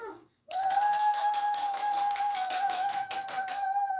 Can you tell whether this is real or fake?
fake